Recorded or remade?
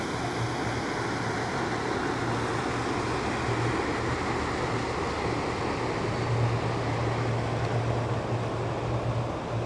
recorded